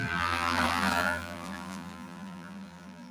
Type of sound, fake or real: fake